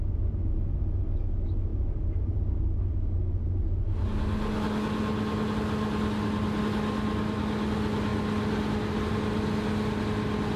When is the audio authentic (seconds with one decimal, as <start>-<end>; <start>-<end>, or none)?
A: 0.0-10.6